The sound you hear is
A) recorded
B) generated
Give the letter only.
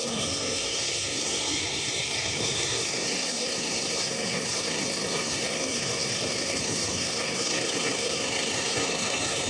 B